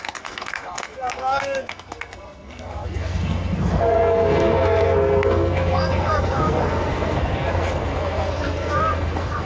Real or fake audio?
fake